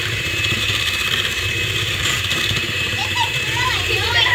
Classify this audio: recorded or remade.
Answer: remade